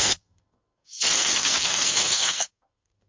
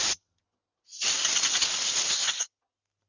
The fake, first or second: first